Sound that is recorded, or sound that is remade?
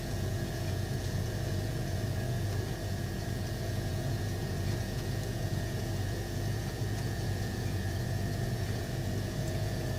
remade